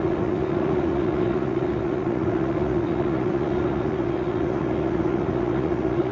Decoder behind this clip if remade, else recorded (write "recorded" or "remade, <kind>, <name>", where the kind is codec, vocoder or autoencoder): remade, vocoder, Vocos